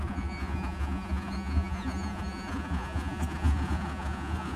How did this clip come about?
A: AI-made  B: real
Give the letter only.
A